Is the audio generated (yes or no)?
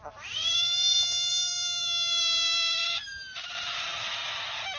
yes